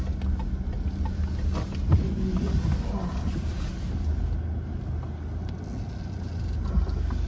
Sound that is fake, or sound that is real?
real